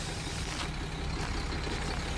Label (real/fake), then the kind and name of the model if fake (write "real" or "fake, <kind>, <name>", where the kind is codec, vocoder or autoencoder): real